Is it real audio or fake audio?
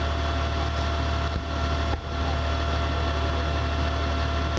real